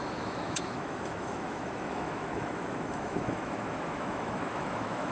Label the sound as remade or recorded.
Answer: remade